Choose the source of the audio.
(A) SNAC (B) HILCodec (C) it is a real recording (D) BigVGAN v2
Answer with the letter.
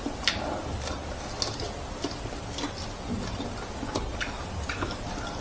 C